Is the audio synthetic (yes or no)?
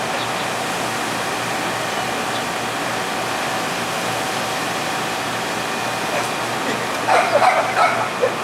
no